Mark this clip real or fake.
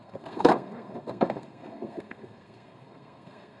fake